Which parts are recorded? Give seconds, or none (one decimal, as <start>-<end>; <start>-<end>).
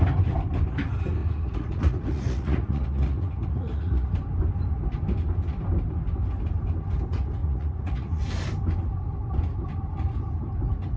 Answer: 0.0-1.2; 4.1-7.4; 8.2-11.0